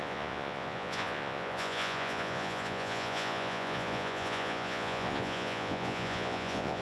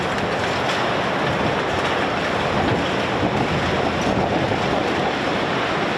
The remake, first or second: first